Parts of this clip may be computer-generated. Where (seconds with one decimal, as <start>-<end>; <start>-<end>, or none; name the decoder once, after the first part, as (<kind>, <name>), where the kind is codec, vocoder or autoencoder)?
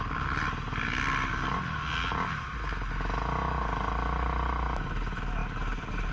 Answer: none